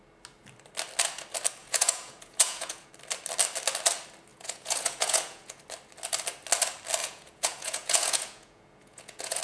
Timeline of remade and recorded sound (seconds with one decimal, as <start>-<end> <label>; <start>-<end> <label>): 0.0-1.6 recorded; 1.6-2.9 remade; 2.9-4.3 recorded; 4.3-5.6 remade; 5.6-7.0 recorded; 7.0-9.4 remade